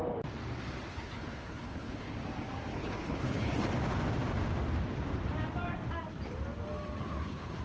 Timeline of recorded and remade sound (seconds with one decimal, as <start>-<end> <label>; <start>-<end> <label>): 0.0-0.9 recorded; 0.9-2.1 remade; 2.1-2.7 recorded; 2.7-3.5 remade; 3.5-7.0 recorded; 7.0-7.6 remade